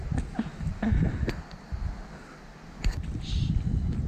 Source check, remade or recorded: recorded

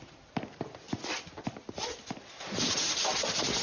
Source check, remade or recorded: recorded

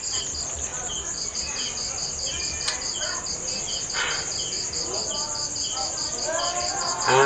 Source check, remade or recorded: recorded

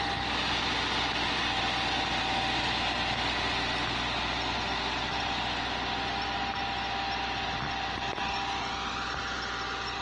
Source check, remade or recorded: recorded